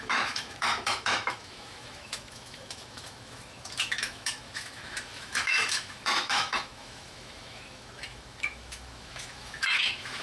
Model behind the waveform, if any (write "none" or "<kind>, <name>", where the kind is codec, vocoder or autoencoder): autoencoder, DAC-VAE